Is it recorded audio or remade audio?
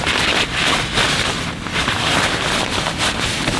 recorded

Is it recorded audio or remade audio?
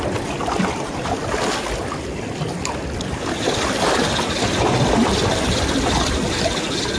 recorded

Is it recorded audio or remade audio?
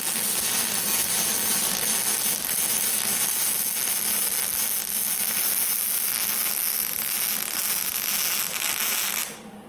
recorded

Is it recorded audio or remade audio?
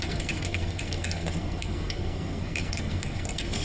remade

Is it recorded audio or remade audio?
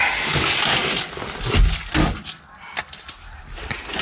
recorded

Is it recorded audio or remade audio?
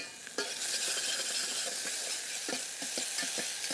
recorded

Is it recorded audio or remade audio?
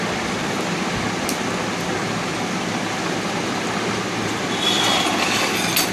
recorded